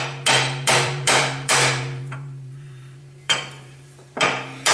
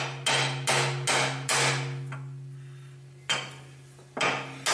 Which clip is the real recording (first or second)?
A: second